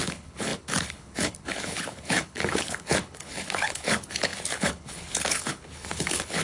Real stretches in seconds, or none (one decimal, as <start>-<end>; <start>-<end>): none